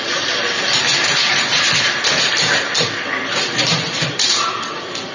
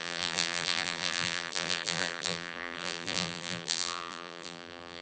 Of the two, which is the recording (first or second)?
first